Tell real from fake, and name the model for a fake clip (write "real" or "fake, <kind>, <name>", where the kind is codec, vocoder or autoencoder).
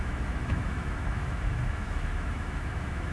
fake, autoencoder, DAC-VAE